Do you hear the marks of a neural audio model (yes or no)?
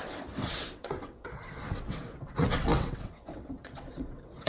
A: yes